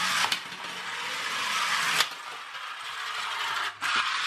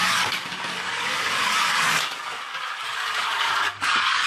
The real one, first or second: first